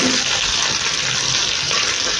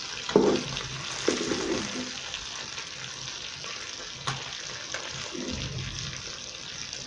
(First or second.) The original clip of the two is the second